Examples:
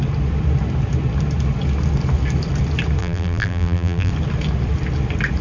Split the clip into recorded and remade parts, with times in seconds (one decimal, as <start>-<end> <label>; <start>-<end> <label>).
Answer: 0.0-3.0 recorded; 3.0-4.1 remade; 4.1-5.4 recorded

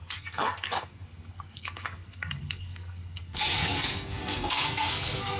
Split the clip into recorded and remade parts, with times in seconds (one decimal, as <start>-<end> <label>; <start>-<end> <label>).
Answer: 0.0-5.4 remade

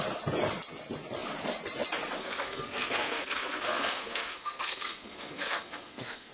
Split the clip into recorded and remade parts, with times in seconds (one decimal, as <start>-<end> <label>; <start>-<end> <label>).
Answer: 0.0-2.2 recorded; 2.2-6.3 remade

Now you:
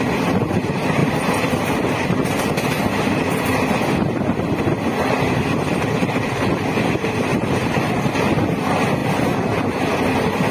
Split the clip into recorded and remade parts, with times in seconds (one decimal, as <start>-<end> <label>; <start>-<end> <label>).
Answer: 0.0-7.3 recorded; 7.3-8.2 remade; 8.2-10.5 recorded

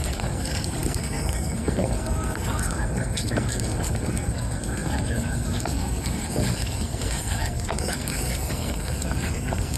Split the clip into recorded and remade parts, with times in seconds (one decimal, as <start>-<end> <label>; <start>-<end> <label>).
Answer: 0.0-9.8 remade

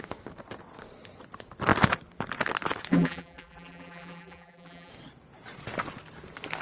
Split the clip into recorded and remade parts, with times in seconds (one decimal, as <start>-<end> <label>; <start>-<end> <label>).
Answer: 0.0-2.9 recorded; 2.9-4.9 remade; 4.9-6.6 recorded